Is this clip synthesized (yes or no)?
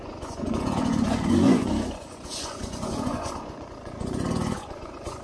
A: yes